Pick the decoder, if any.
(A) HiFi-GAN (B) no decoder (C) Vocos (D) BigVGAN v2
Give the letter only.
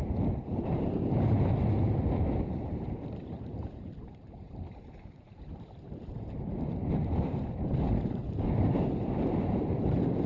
D